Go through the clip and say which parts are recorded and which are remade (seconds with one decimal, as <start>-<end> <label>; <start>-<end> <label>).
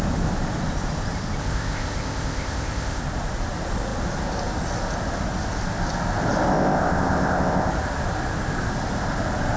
0.0-1.4 recorded; 1.4-3.0 remade; 3.0-6.5 recorded; 6.5-7.7 remade; 7.7-9.6 recorded